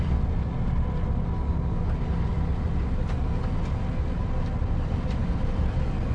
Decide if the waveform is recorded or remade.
recorded